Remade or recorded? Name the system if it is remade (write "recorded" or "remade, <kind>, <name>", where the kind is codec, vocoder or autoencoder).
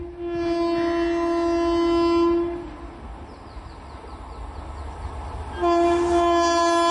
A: recorded